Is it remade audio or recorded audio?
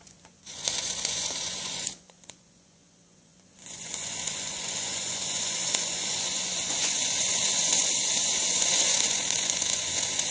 remade